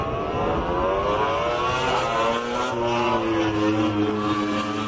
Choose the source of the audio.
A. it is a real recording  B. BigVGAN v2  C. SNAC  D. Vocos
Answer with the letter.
A